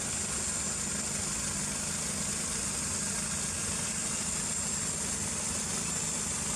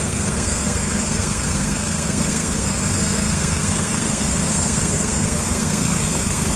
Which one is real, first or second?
first